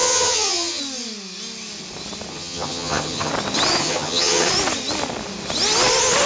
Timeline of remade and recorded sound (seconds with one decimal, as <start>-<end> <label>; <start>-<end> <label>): 0.0-0.8 remade; 0.8-2.3 recorded; 2.3-3.3 remade; 3.3-3.8 recorded; 3.8-4.5 remade; 4.5-6.3 recorded